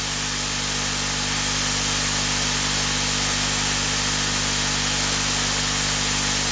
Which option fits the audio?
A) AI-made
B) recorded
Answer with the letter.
B